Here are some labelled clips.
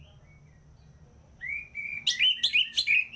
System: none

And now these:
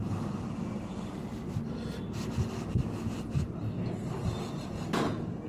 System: none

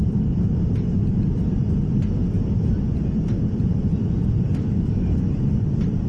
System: vocoder, BigVGAN v2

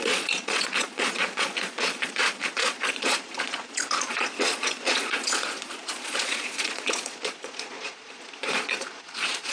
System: vocoder, Vocos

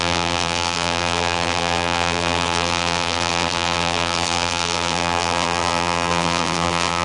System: vocoder, BigVGAN v2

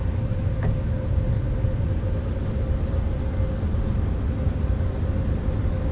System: none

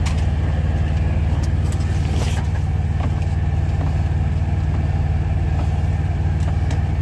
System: none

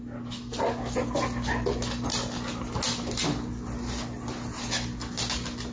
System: none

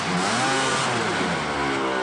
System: none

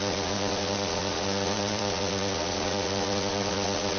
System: vocoder, Vocos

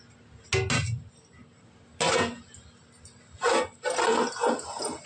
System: none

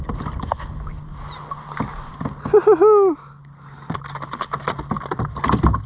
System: none